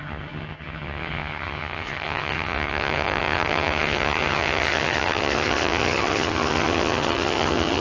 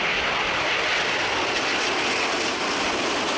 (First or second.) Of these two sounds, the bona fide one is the second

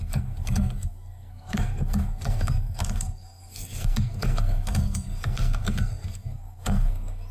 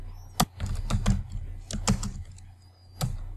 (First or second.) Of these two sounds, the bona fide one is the second